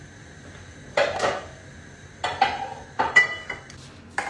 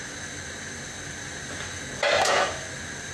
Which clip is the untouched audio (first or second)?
second